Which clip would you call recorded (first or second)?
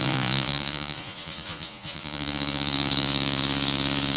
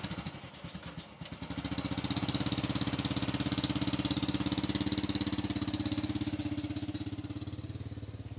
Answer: second